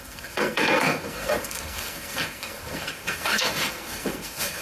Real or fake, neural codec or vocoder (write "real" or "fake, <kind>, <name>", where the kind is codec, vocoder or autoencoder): fake, codec, SNAC